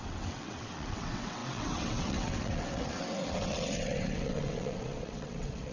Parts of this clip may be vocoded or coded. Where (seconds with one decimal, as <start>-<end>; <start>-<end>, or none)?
0.0-5.7